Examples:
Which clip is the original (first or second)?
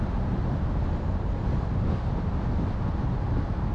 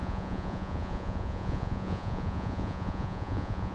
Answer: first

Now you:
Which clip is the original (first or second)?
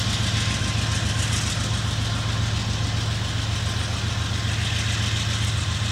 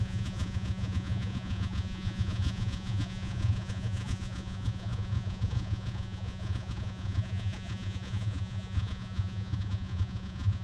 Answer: first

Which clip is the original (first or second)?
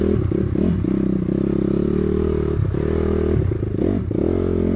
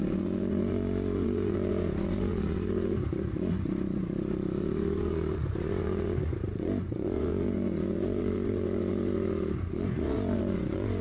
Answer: first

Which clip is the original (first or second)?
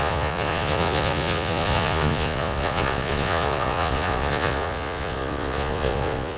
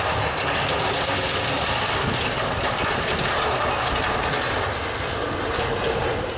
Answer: second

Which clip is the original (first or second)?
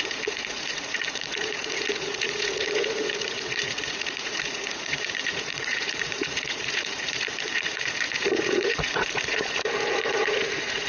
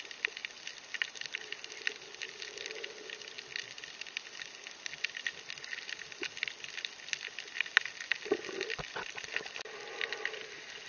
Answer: second